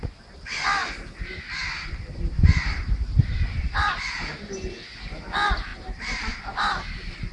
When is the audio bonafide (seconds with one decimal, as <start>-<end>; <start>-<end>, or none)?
0.0-0.8; 4.1-5.7